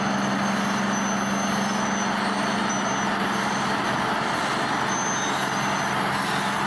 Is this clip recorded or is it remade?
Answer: recorded